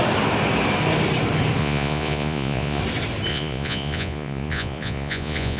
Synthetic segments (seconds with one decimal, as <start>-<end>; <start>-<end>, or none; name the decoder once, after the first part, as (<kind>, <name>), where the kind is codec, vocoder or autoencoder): 1.6-2.8 (vocoder, Vocos); 3.3-5.6